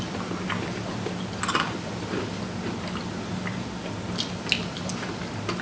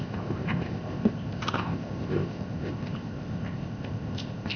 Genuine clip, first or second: first